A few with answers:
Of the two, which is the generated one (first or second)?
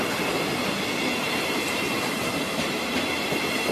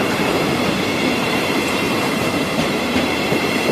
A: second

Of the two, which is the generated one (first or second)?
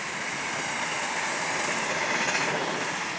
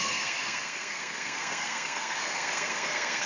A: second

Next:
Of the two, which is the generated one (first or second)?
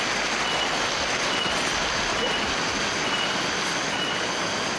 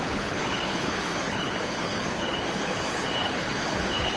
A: second